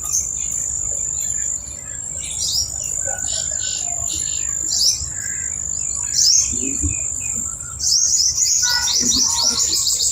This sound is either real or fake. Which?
real